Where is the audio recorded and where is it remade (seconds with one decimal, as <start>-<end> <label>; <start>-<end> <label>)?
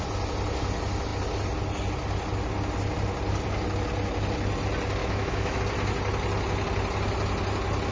0.0-5.0 recorded; 5.0-5.6 remade; 5.6-7.9 recorded